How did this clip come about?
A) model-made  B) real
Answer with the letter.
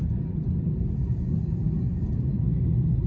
B